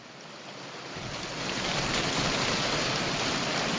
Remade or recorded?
recorded